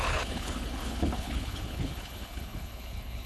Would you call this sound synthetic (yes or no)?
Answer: yes